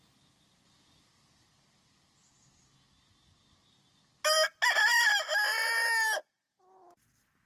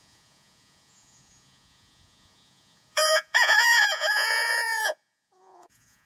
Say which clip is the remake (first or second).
second